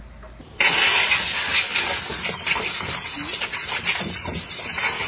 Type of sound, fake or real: real